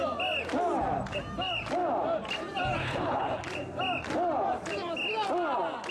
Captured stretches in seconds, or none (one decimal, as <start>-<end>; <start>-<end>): 0.0-2.8; 3.4-5.9